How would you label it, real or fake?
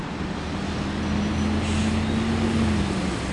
real